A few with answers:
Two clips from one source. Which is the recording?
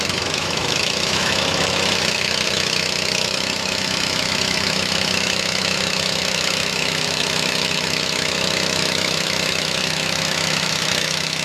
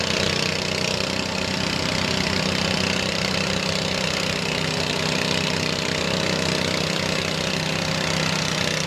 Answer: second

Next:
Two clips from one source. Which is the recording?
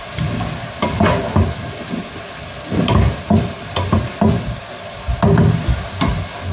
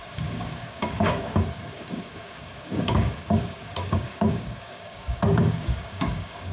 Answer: first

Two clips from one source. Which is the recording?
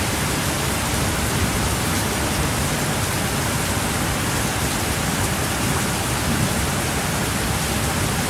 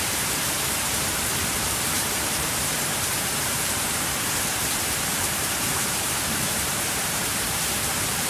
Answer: first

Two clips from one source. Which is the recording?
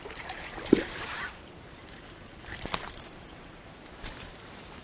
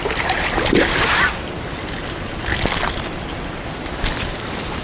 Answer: second